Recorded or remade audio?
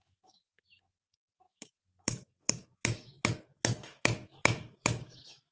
remade